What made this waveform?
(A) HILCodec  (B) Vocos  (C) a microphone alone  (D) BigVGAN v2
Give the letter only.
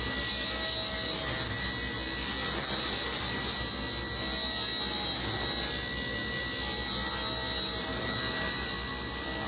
C